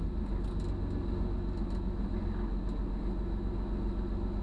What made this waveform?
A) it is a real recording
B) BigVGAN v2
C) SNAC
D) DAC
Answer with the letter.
A